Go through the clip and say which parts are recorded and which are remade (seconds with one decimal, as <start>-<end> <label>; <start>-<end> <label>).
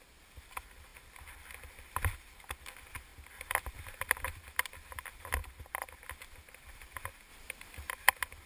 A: 0.0-7.3 recorded; 7.3-7.9 remade; 7.9-8.5 recorded